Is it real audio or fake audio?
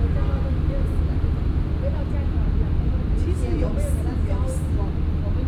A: real